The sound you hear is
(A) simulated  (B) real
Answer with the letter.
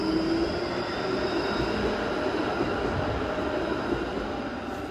B